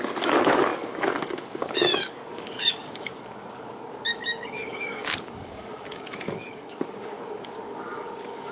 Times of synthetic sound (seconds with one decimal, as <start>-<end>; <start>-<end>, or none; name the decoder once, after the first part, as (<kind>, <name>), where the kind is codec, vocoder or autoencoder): 0.0-8.5 (codec, DAC)